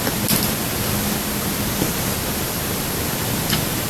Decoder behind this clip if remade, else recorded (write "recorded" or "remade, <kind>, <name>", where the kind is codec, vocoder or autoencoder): recorded